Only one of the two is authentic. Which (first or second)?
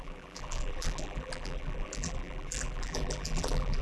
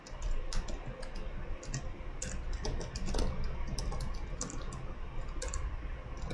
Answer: second